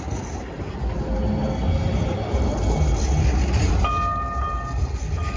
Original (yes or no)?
yes